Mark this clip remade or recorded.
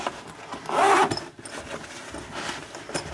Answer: recorded